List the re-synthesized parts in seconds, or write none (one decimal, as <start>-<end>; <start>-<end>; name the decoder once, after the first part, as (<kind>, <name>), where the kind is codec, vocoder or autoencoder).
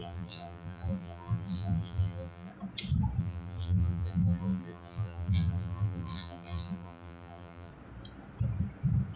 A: 0.0-2.5 (vocoder, BigVGAN v2); 3.2-7.7